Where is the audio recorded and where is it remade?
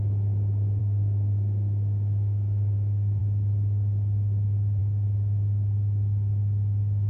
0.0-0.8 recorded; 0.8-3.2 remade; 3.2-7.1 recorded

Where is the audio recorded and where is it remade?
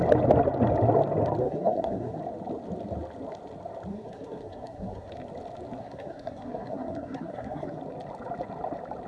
0.0-1.4 recorded; 1.4-2.2 remade; 2.2-3.9 recorded; 3.9-5.1 remade; 5.1-5.8 recorded; 5.8-7.8 remade; 7.8-9.1 recorded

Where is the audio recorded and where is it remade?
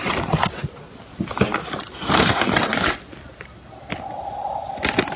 0.0-5.2 recorded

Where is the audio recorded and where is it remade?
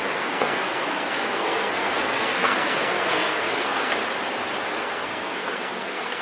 0.0-4.0 remade; 4.0-4.7 recorded; 4.7-6.2 remade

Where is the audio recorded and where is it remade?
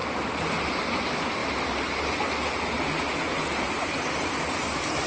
0.0-5.1 recorded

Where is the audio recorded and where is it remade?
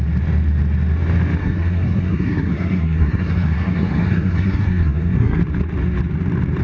0.0-1.4 recorded; 1.4-5.4 remade; 5.4-6.6 recorded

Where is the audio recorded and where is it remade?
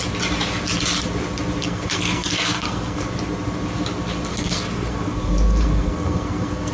0.0-1.6 recorded; 1.6-3.1 remade; 3.1-4.3 recorded; 4.3-6.7 remade